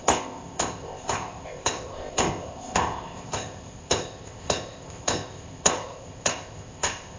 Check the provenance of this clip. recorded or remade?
remade